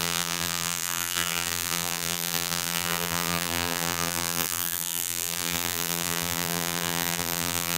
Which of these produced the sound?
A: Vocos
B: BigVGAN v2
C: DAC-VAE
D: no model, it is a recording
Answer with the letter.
B